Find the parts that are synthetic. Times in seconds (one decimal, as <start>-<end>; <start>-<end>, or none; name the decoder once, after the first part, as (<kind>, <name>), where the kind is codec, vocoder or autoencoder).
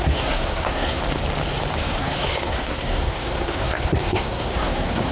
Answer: 0.0-1.0 (codec, SNAC); 1.8-5.1